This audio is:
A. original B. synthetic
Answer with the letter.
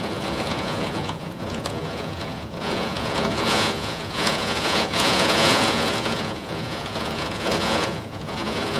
B